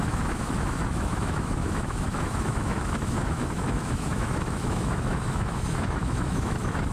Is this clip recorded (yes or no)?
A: no